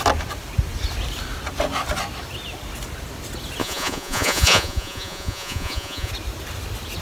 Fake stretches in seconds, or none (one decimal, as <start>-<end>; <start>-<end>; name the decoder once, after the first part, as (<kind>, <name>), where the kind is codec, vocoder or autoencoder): 3.6-6.1 (vocoder, Vocos)